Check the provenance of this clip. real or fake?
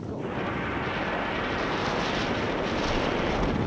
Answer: real